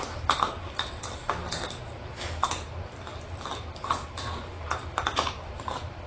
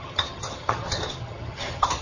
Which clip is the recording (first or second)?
first